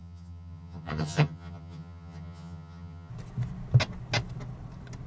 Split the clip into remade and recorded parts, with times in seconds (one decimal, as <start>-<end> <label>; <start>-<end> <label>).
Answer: 0.0-3.1 remade; 3.1-5.1 recorded